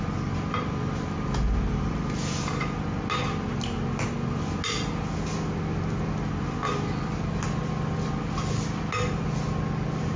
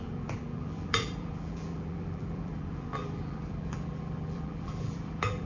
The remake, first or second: second